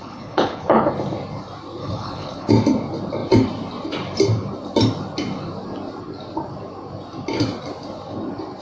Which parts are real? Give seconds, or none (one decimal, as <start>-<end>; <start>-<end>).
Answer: 0.9-1.8; 2.5-8.6